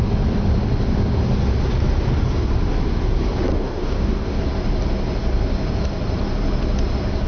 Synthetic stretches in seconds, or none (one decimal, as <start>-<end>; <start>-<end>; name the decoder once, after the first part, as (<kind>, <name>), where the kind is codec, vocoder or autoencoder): 3.5-4.4 (codec, DAC)